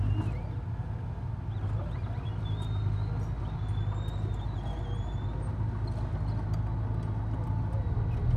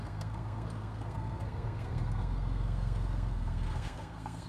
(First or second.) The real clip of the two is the first